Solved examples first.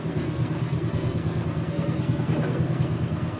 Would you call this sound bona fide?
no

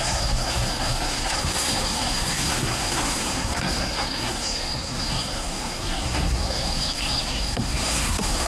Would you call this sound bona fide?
no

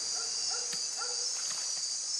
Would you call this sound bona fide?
yes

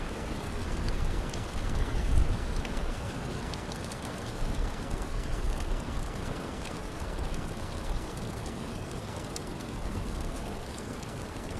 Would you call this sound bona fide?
no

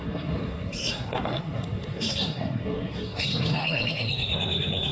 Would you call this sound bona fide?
no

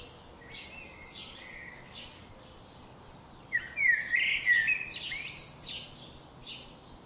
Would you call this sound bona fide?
yes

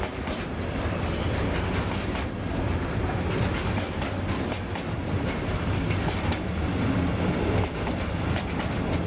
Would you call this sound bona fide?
yes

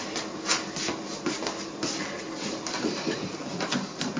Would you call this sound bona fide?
yes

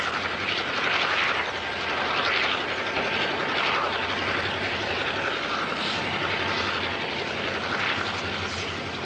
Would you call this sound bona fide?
yes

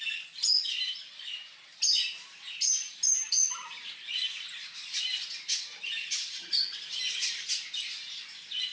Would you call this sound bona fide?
yes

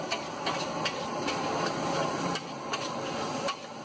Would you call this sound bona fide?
yes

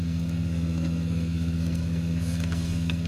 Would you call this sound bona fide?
no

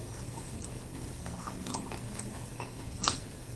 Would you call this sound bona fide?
no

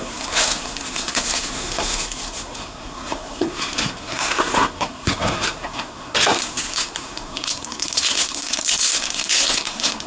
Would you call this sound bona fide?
no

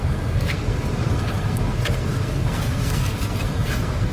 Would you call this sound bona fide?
no